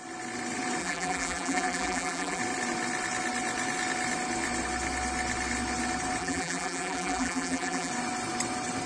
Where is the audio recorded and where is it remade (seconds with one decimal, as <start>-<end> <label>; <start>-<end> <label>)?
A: 0.0-0.8 recorded; 0.8-2.4 remade; 2.4-6.2 recorded; 6.2-7.9 remade; 7.9-8.9 recorded

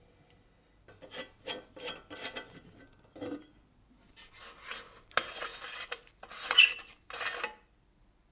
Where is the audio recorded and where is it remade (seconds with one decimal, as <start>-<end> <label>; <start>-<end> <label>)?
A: 0.0-8.3 recorded

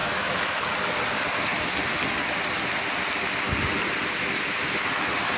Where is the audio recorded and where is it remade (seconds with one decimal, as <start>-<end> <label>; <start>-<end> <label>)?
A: 0.0-0.6 remade; 0.6-5.4 recorded

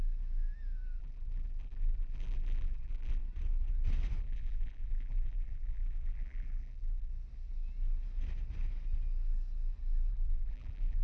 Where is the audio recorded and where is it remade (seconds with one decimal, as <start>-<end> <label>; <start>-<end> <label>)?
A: 0.0-1.0 recorded; 1.0-3.2 remade; 3.2-4.2 recorded; 4.2-7.1 remade; 7.1-10.1 recorded; 10.1-11.0 remade